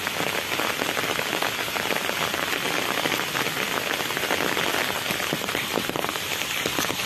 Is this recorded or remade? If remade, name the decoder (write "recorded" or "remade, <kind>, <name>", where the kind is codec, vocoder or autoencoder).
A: recorded